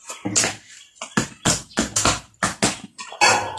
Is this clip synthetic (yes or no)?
no